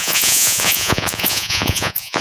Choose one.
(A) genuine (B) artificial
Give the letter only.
B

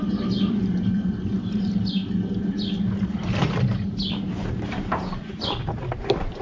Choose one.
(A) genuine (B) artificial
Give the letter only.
A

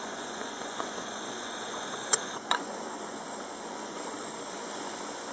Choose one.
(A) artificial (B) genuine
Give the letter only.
A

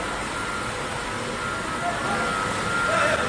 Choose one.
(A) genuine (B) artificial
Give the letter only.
A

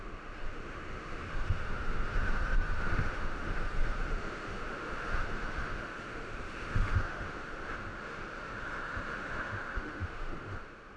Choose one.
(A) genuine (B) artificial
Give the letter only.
B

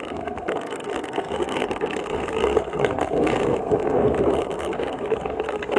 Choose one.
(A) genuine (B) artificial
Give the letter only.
B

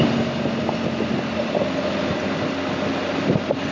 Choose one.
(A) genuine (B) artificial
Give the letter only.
A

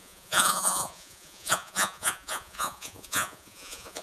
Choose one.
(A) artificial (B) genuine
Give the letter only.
A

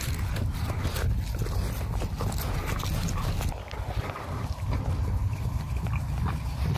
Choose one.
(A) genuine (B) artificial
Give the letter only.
A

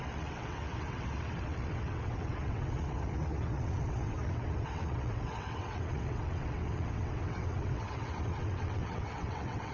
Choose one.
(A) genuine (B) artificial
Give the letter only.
B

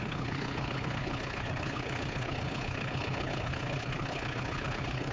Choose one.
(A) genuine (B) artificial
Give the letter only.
B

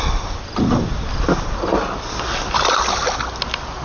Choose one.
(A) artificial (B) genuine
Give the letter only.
B